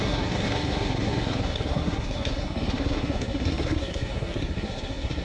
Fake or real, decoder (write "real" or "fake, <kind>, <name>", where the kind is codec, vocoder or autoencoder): fake, codec, SNAC